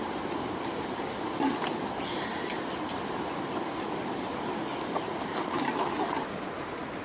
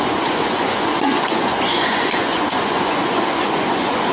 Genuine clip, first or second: first